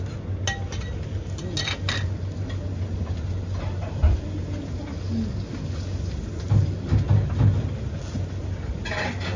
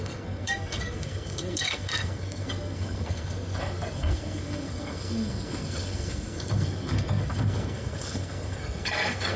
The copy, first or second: second